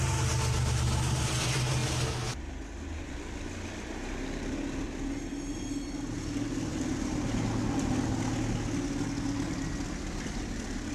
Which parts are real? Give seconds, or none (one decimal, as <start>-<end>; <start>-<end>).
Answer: 0.0-10.9